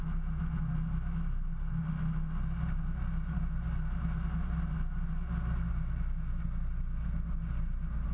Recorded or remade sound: recorded